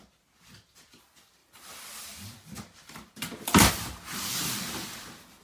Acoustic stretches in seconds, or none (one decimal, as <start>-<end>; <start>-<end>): 0.0-1.4; 3.7-5.4